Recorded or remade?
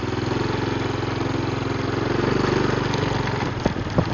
recorded